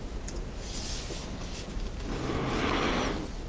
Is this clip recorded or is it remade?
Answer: recorded